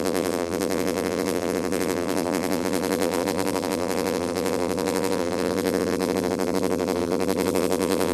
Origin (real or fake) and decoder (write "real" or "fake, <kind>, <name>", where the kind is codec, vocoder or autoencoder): fake, vocoder, BigVGAN v2